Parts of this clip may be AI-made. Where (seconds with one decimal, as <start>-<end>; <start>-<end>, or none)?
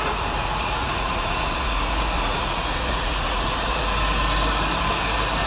0.0-3.8